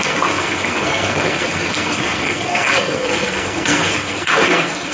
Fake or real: fake